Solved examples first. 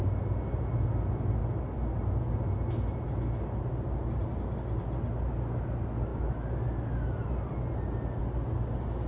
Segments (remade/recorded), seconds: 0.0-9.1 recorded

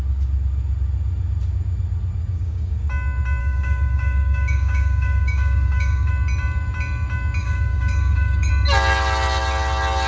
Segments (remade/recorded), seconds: 0.0-2.2 recorded; 2.2-2.9 remade; 2.9-3.4 recorded; 3.4-6.1 remade; 6.1-7.4 recorded; 7.4-8.5 remade; 8.5-10.1 recorded

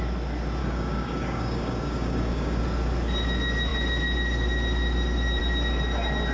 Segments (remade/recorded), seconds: 0.0-0.6 recorded; 0.6-2.6 remade; 2.6-6.3 recorded

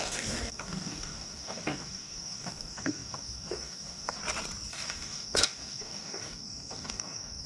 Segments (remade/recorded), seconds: 0.0-4.2 remade; 4.2-4.7 recorded; 4.7-7.5 remade

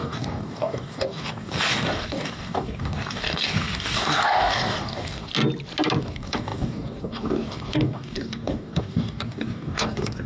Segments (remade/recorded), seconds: 0.0-5.3 remade; 5.3-6.0 recorded; 6.0-10.3 remade